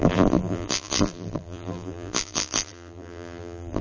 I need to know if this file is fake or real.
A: fake